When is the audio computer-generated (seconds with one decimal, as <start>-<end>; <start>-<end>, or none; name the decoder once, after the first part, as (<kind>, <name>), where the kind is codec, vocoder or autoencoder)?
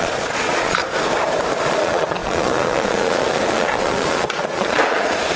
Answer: 0.0-0.8 (vocoder, Vocos); 1.6-5.4